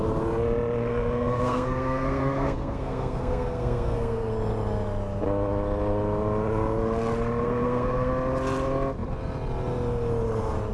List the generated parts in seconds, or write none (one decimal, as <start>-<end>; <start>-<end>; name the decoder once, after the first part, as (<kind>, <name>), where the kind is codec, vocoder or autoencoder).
0.8-4.3 (codec, SNAC); 7.4-8.1